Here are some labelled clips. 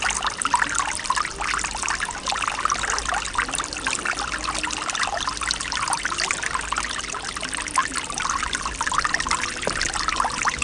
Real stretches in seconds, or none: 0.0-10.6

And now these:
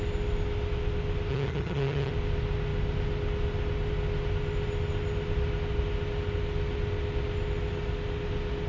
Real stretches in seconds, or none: 0.0-1.3; 2.1-8.7

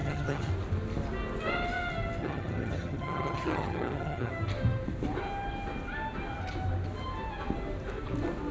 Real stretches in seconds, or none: 0.5-2.2; 4.3-8.5